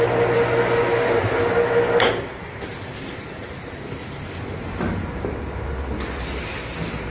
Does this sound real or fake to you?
real